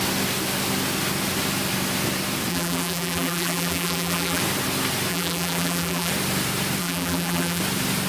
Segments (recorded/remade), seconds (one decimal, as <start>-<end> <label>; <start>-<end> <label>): 0.0-2.5 recorded; 2.5-4.4 remade; 4.4-5.1 recorded; 5.1-6.1 remade; 6.1-6.8 recorded; 6.8-7.6 remade; 7.6-8.1 recorded